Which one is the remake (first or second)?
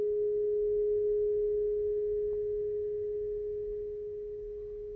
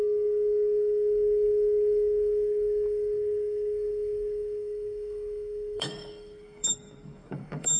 second